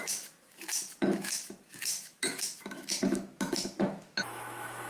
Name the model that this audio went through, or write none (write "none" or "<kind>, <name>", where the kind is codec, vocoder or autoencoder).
autoencoder, DAC-VAE